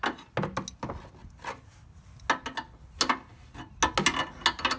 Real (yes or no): yes